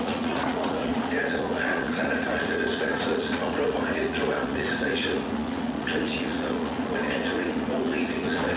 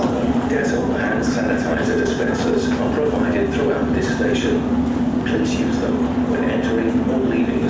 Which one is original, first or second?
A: second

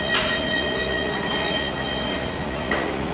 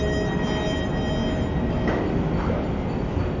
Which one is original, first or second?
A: second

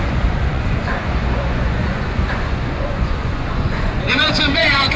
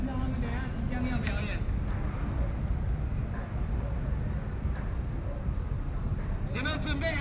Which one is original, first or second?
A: second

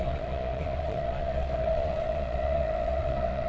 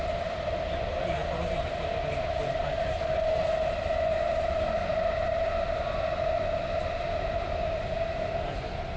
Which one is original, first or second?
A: second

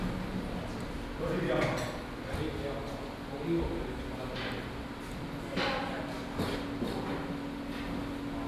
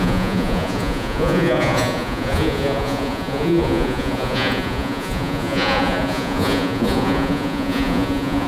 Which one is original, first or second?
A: first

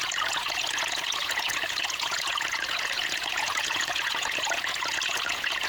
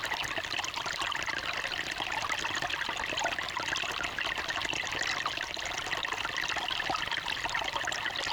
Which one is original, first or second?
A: second